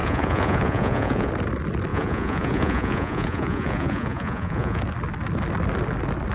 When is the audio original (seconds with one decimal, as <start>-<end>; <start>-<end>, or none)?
1.3-1.9; 4.8-6.3